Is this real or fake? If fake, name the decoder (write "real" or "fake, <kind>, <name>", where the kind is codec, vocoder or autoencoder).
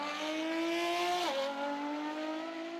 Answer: real